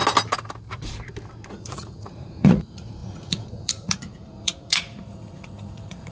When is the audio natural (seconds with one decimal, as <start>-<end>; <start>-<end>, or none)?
0.0-1.5